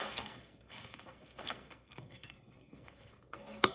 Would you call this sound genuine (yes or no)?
no